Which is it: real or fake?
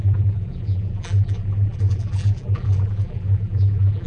fake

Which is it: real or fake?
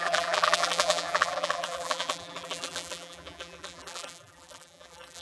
fake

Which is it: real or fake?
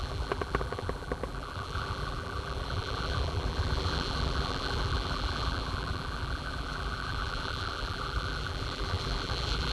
fake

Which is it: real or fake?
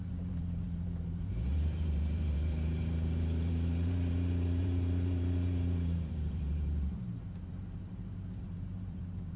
fake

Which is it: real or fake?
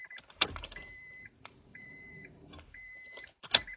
fake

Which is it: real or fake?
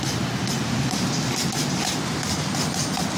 real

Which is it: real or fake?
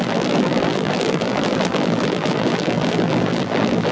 fake